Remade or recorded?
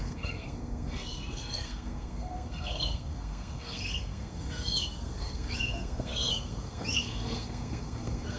remade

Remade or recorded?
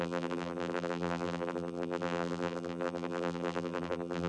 remade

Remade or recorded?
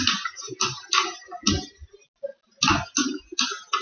recorded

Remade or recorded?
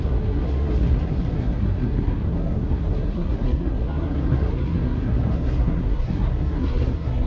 remade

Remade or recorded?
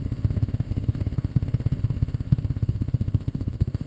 remade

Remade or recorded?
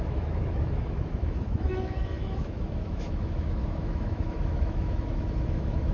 remade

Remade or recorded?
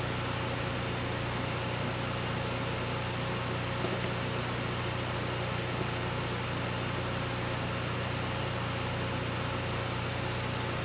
recorded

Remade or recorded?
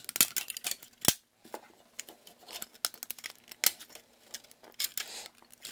recorded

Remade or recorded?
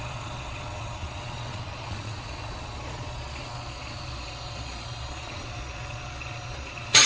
remade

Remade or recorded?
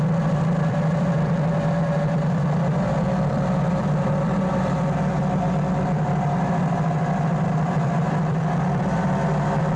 remade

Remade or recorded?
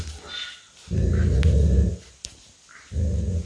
recorded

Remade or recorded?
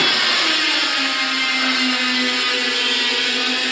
recorded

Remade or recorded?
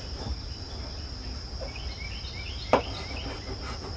recorded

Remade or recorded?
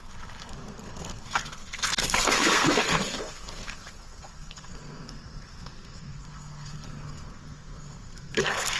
remade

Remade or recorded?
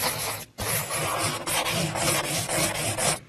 recorded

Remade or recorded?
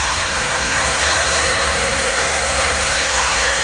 remade